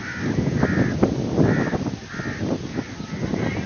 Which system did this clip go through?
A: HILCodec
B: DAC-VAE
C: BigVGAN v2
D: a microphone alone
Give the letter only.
D